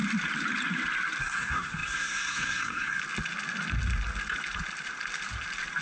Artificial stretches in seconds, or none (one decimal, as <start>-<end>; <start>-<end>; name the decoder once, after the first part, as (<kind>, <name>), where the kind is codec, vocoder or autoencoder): 1.2-3.0 (codec, SNAC)